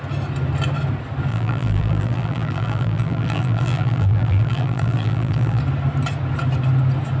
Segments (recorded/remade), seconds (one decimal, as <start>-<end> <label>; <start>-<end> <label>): 0.0-1.3 recorded; 1.3-5.6 remade; 5.6-7.2 recorded